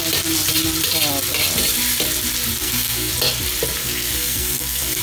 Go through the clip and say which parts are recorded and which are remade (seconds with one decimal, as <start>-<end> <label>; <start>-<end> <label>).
0.0-2.6 recorded; 2.6-3.1 remade; 3.1-3.8 recorded; 3.8-5.0 remade

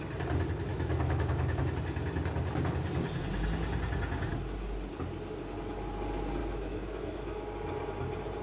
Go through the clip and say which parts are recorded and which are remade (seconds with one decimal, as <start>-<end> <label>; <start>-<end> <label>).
0.0-0.7 recorded; 0.7-1.6 remade; 1.6-6.4 recorded; 6.4-7.4 remade; 7.4-8.4 recorded

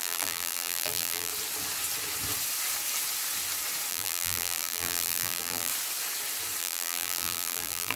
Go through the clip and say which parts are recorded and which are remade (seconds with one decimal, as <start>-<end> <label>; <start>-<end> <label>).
0.0-1.3 remade; 1.3-3.9 recorded; 3.9-5.7 remade; 5.7-6.6 recorded; 6.6-8.0 remade

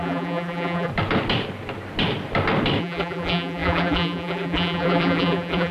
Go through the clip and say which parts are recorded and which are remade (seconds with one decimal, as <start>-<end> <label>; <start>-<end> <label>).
0.0-0.9 remade; 0.9-2.8 recorded; 2.8-5.7 remade

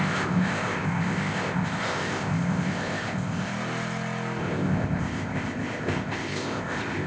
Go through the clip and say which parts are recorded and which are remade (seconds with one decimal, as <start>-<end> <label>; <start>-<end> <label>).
0.0-3.5 remade; 3.5-4.4 recorded; 4.4-7.1 remade